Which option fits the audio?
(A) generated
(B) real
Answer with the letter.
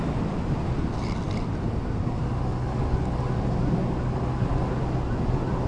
B